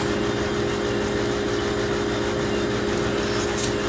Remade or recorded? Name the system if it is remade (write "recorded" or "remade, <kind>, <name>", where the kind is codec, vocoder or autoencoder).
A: recorded